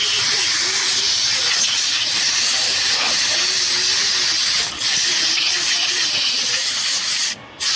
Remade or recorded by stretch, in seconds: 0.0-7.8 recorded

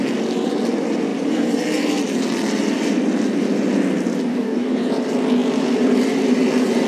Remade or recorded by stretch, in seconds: 0.0-4.3 recorded; 4.3-4.9 remade; 4.9-6.9 recorded